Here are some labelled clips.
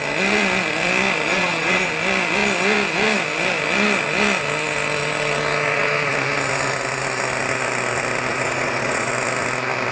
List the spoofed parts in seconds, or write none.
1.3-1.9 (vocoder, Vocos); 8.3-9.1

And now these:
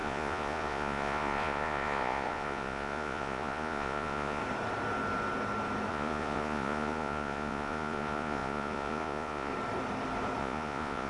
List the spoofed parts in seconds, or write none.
0.0-4.4 (vocoder, Vocos); 5.9-9.5; 10.4-11.1

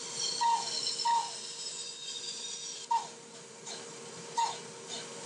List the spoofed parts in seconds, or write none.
1.7-2.4 (vocoder, Vocos)

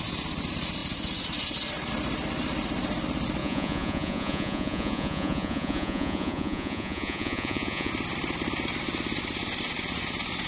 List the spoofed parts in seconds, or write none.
3.4-7.9 (vocoder, Vocos)

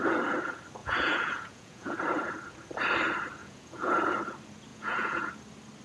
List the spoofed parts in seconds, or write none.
0.8-2.0 (vocoder, Vocos); 3.4-4.0; 4.7-5.3

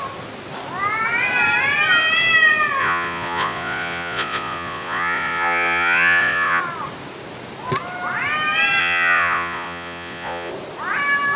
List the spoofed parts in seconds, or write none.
2.8-6.6 (vocoder, Vocos); 8.8-10.5

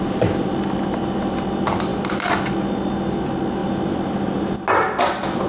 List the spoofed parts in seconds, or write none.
none